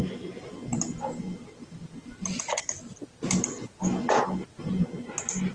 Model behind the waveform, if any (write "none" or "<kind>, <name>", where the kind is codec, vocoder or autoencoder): none